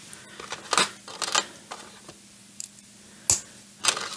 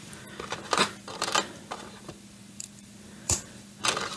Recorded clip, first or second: first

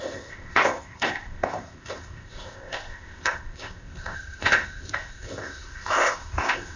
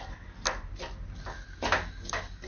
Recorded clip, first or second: second